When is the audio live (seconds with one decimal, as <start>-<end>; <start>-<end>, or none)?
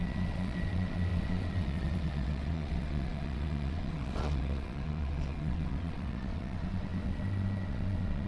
none